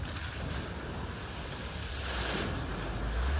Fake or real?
real